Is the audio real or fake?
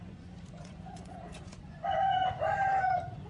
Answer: fake